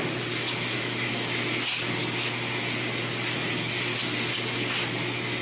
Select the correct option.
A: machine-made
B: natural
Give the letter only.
B